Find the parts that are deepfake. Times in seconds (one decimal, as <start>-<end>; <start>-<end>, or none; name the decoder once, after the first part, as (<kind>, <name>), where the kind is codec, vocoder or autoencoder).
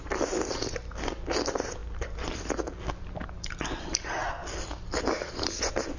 none